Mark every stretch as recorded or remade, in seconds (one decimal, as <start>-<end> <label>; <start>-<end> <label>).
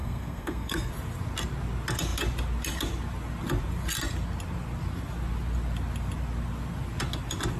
0.0-0.9 remade; 0.9-7.6 recorded